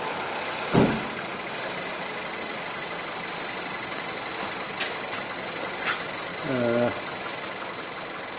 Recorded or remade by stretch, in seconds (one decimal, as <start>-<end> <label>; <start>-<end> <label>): 0.0-8.4 recorded